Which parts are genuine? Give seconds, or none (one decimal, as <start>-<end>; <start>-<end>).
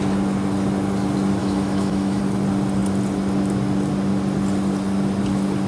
0.0-1.4; 2.2-5.7